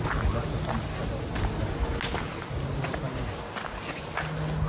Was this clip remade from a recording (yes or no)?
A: no